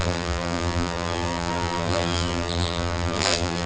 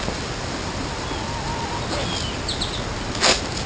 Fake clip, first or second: first